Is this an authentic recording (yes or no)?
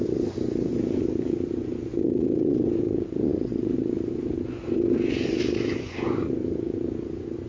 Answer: no